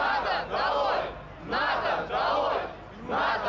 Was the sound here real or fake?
real